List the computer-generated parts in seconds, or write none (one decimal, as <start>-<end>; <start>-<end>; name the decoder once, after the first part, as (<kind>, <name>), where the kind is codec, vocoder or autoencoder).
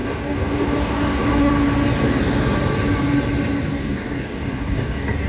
0.0-1.5 (codec, DAC); 3.7-5.3